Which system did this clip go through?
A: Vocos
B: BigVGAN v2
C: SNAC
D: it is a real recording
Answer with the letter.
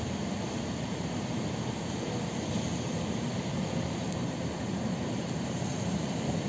B